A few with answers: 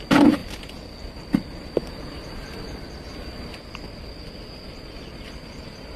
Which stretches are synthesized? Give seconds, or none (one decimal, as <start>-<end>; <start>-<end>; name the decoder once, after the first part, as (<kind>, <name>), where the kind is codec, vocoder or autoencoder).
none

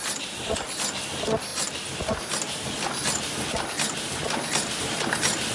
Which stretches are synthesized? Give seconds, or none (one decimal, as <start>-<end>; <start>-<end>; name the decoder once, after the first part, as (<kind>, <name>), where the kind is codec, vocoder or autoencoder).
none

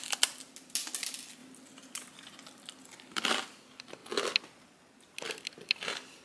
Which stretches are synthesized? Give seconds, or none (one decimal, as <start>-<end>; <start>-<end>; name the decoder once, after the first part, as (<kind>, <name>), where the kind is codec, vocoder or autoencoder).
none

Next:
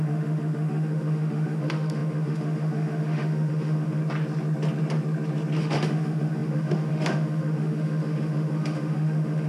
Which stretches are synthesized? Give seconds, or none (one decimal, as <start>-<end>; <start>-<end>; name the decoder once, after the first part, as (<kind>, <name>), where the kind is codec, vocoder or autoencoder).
0.0-4.0 (autoencoder, DAC-VAE); 5.6-9.5